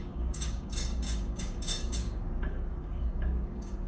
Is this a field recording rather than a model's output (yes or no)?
no